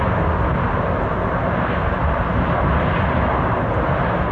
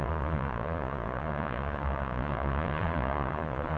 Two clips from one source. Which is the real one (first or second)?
first